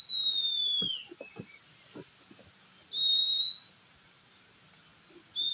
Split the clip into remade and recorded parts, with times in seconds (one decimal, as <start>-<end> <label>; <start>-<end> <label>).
0.0-5.5 recorded

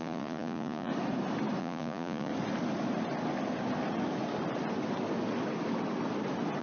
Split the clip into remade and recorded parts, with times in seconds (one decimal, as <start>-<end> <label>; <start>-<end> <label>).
0.0-0.9 remade; 0.9-1.6 recorded; 1.6-2.3 remade; 2.3-6.6 recorded

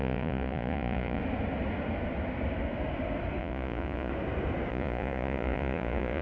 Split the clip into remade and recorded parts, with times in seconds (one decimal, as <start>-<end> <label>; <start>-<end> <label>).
0.0-1.2 remade; 1.2-3.4 recorded; 3.4-4.1 remade; 4.1-4.7 recorded; 4.7-6.2 remade

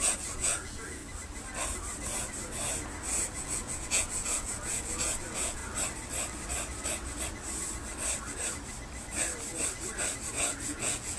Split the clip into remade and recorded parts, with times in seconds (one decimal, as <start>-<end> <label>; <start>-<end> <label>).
0.0-1.0 remade; 1.0-3.4 recorded; 3.4-5.6 remade; 5.6-10.3 recorded; 10.3-11.2 remade